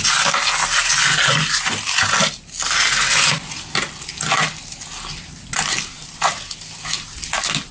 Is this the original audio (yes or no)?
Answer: yes